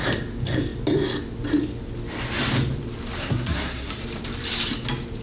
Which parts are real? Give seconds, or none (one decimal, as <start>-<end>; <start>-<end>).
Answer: 0.0-3.2; 3.9-5.2